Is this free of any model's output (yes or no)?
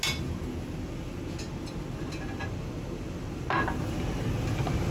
yes